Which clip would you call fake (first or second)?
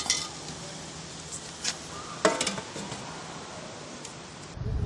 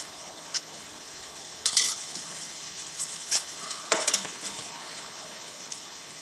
second